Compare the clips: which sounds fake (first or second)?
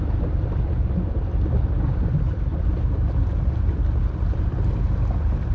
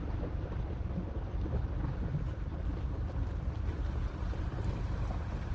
second